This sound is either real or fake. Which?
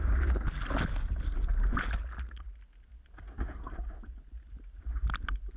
real